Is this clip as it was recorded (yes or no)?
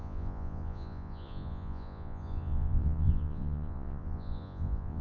no